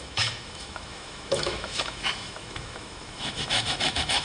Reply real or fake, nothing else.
fake